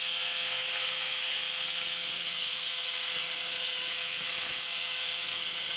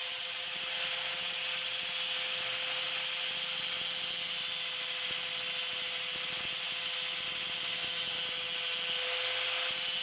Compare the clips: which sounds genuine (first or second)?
second